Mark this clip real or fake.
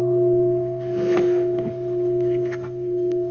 fake